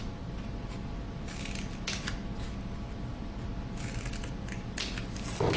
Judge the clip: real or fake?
real